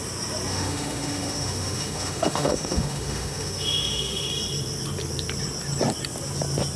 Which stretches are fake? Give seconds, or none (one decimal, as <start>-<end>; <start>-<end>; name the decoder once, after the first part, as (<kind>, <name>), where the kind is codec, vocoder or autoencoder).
0.5-4.3 (autoencoder, DAC-VAE)